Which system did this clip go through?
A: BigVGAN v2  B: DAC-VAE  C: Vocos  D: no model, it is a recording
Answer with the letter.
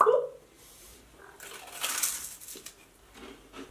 D